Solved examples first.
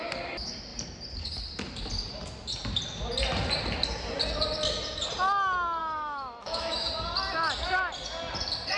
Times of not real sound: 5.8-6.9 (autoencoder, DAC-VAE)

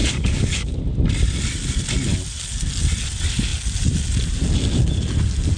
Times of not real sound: 0.0-0.8 (codec, DAC)

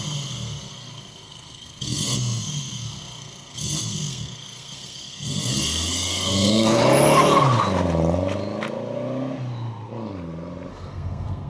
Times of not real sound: 0.0-6.8 (codec, SNAC); 10.7-11.5